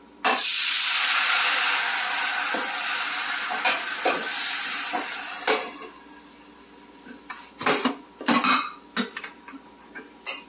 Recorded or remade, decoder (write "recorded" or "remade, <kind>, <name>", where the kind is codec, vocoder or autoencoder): recorded